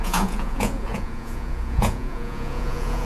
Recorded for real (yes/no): no